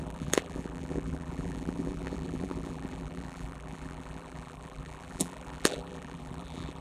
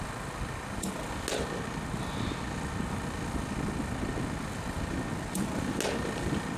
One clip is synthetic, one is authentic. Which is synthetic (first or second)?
first